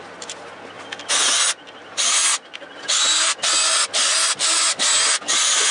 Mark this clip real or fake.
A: real